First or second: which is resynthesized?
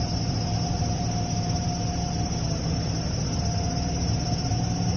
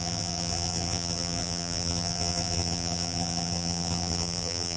second